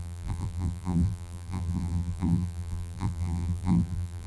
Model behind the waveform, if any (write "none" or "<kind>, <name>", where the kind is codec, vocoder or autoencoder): vocoder, BigVGAN v2